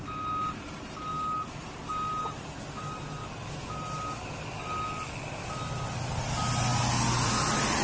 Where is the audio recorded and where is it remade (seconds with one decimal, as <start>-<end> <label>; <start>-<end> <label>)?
0.0-7.8 recorded